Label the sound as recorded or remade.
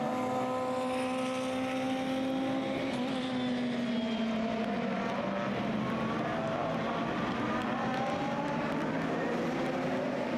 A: recorded